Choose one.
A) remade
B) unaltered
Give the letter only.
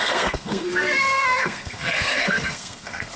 A